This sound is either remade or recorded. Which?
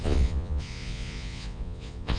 remade